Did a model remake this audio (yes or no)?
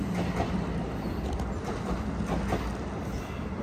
no